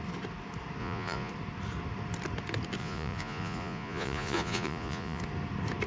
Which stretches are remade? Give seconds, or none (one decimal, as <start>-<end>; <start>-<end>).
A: 0.8-1.3; 2.8-5.2